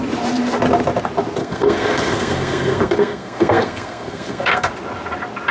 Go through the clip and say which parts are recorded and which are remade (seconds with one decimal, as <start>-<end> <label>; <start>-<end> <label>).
0.0-1.4 recorded; 1.4-4.7 remade; 4.7-5.5 recorded